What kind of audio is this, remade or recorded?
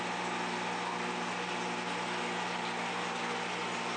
recorded